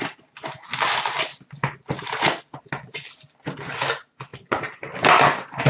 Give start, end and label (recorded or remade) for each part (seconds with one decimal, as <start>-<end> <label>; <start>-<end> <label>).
0.0-5.7 recorded